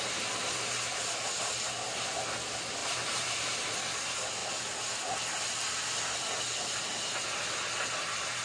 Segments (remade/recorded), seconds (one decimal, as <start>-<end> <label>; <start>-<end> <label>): 0.0-2.8 recorded; 2.8-3.7 remade; 3.7-8.4 recorded